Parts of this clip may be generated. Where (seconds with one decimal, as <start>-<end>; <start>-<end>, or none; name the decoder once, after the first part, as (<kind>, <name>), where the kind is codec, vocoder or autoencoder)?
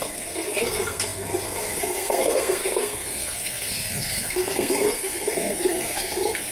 0.0-6.5 (codec, SNAC)